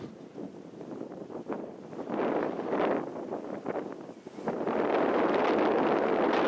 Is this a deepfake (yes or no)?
no